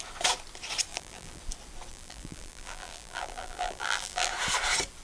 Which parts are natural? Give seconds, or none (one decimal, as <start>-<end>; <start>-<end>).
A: 0.0-0.9; 1.4-1.9; 4.3-5.0